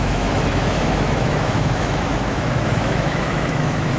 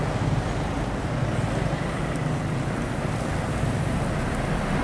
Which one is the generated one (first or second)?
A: first